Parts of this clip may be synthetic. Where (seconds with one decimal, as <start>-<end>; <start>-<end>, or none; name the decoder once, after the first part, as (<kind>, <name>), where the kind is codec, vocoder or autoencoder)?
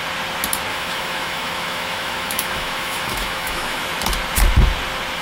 0.7-3.8 (autoencoder, DAC-VAE)